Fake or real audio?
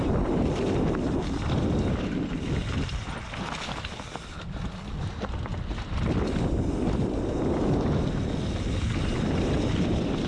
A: real